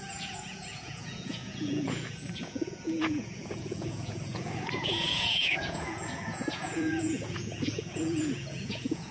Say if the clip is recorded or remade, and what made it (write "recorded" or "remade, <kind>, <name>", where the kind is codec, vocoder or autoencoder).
remade, vocoder, Vocos